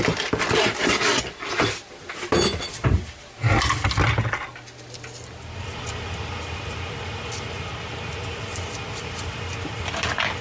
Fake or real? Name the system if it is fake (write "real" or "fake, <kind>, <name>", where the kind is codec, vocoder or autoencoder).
real